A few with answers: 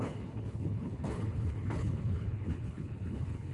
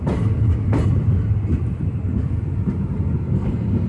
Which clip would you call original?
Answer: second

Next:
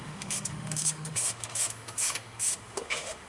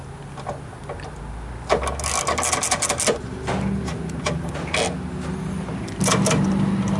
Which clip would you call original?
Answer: second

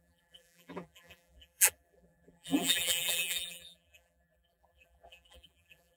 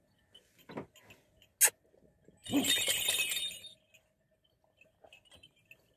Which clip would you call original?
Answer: second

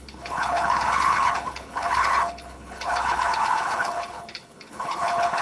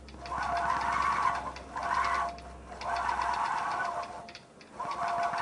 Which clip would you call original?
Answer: second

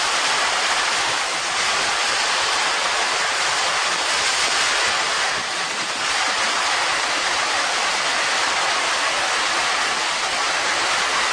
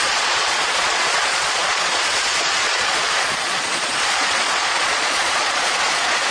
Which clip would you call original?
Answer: first